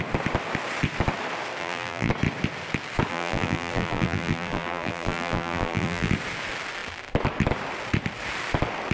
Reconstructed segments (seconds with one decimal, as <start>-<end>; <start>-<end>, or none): 1.6-2.1; 3.1-6.1